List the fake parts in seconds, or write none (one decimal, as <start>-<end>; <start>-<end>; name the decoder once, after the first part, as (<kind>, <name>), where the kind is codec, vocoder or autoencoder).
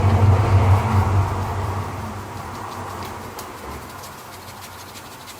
1.5-3.6 (vocoder, BigVGAN v2)